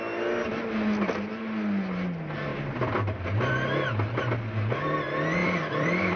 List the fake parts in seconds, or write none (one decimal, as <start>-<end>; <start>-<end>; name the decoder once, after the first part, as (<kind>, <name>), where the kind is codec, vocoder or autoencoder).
2.5-3.5 (vocoder, BigVGAN v2); 5.4-6.2